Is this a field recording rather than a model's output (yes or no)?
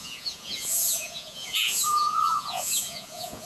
no